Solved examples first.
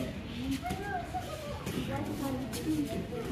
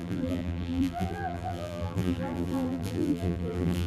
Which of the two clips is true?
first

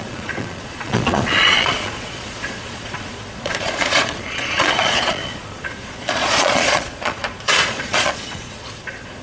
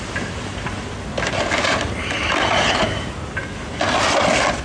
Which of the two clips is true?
second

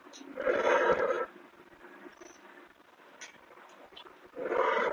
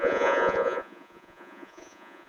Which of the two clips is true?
first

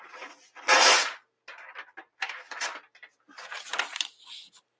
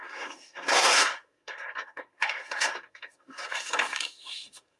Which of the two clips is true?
first